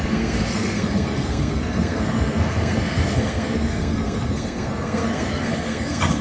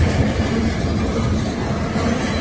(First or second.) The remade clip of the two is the first